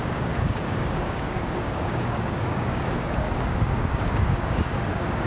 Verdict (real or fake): fake